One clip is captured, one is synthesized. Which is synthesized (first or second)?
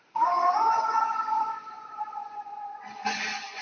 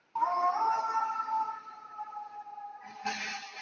first